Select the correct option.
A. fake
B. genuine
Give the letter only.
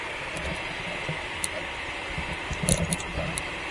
B